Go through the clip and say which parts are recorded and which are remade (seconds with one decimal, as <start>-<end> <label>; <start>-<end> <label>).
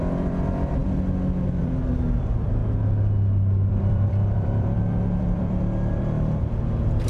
0.0-0.8 remade; 0.8-1.6 recorded; 1.6-2.6 remade; 2.6-3.7 recorded; 3.7-7.1 remade